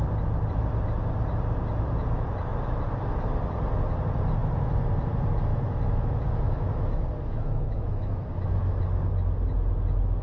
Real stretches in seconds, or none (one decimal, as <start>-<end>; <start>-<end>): 0.0-5.5; 9.1-10.2